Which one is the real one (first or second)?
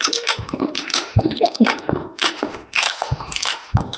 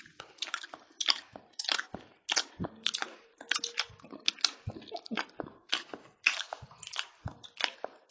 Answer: second